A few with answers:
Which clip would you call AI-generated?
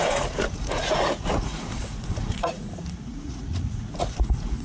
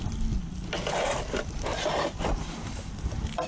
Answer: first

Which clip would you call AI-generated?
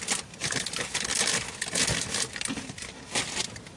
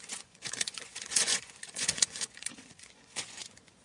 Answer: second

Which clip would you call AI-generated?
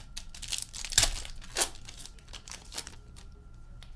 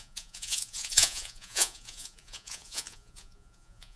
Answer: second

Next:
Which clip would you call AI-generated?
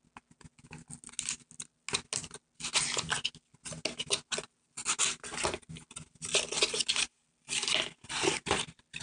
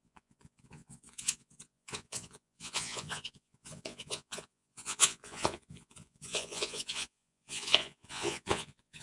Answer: second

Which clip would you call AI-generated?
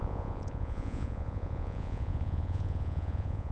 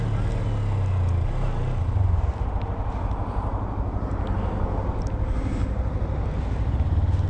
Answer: first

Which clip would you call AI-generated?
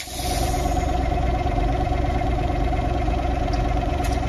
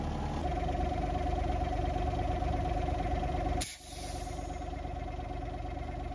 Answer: first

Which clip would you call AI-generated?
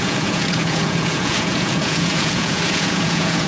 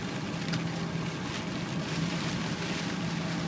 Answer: first